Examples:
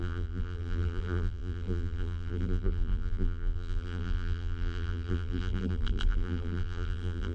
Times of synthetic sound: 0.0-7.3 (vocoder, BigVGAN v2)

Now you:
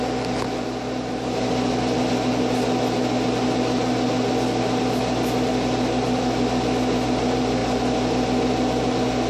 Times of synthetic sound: none

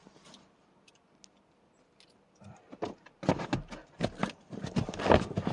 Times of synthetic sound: none